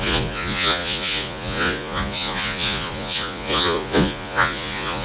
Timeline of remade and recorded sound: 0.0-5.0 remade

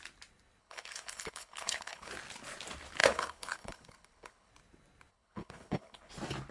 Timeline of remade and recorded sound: 0.0-0.6 recorded; 0.6-2.1 remade; 2.1-3.0 recorded; 3.0-4.5 remade; 4.5-5.1 recorded; 5.1-6.1 remade; 6.1-6.5 recorded

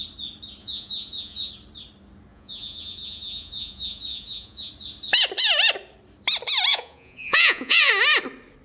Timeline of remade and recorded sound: 0.0-0.6 recorded; 0.6-1.5 remade; 1.5-2.3 recorded; 2.3-4.7 remade; 4.7-6.7 recorded; 6.7-7.9 remade; 7.9-8.6 recorded

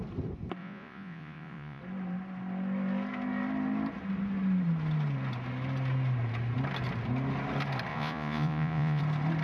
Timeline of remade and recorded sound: 0.0-0.6 recorded; 0.6-1.8 remade; 1.8-7.9 recorded; 7.9-9.0 remade; 9.0-9.4 recorded

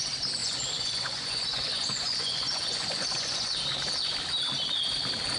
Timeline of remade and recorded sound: 0.0-0.4 recorded; 0.4-3.6 remade; 3.6-5.4 recorded